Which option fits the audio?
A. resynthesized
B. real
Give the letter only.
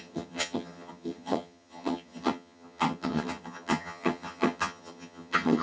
A